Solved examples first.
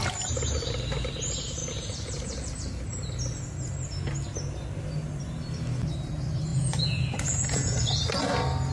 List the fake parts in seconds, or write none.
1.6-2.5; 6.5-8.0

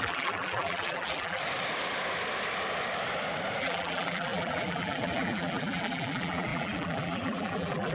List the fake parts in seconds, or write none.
0.0-1.4; 3.6-7.9

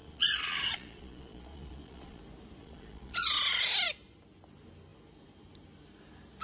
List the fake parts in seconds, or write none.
0.0-2.2; 2.6-3.6

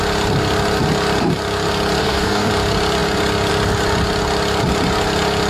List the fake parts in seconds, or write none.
2.0-2.5

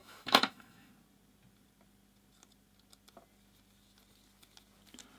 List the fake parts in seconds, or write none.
0.0-0.9

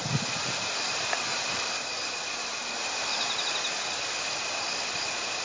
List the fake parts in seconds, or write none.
none